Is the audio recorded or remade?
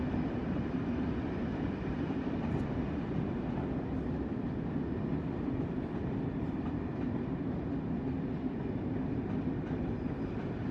remade